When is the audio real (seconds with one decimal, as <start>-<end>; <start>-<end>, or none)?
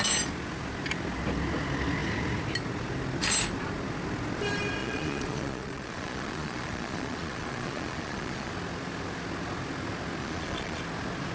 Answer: 0.0-4.8; 8.5-10.2; 10.8-11.3